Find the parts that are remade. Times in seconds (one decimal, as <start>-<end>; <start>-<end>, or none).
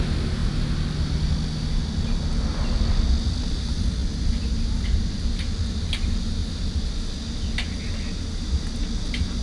none